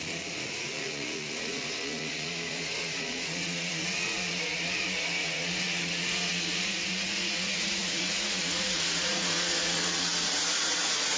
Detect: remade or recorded remade